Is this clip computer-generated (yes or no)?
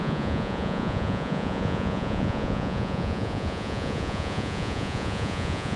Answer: yes